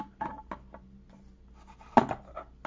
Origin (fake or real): real